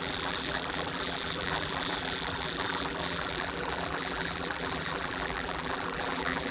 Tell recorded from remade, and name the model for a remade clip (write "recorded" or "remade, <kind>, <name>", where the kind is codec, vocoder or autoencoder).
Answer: remade, vocoder, BigVGAN v2